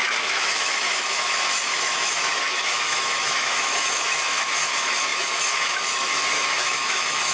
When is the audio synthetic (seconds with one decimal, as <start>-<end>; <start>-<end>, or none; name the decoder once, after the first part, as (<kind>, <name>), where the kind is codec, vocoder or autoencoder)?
0.0-7.3 (autoencoder, DAC-VAE)